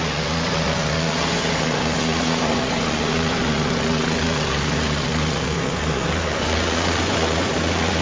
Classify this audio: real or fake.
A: fake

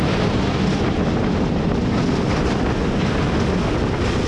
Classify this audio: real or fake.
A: real